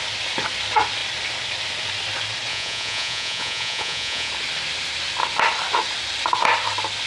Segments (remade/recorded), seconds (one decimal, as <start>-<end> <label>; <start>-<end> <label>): 0.0-2.5 recorded; 2.5-4.3 remade; 4.3-7.1 recorded